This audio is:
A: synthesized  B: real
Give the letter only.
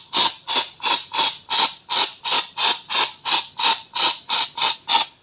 A